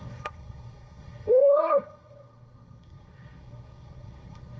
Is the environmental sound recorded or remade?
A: remade